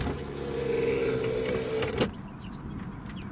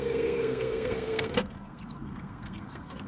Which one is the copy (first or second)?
second